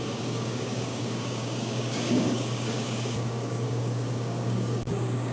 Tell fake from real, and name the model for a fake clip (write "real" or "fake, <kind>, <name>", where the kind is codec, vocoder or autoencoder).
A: fake, codec, DAC